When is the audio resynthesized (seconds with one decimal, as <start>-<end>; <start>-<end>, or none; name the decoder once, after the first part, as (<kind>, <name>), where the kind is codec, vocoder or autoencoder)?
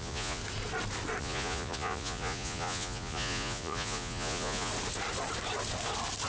0.0-0.4 (vocoder, Vocos); 1.2-4.7